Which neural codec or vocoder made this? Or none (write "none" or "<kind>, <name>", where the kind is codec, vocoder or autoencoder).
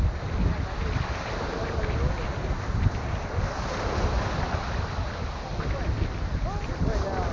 none